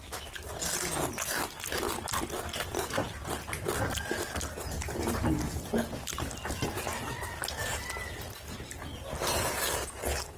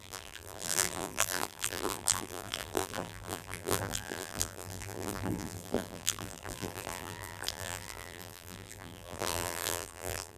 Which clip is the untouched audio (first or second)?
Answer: first